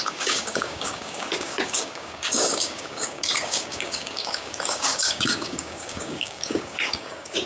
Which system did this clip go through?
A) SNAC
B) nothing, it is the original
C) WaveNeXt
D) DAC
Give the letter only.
D